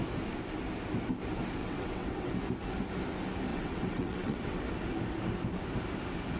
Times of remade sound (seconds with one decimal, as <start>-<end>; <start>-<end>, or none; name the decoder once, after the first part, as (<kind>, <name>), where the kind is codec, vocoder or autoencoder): 1.6-2.3 (vocoder, WaveNeXt); 3.5-4.6